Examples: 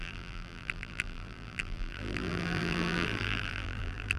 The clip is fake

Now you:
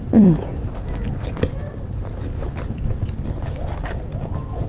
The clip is fake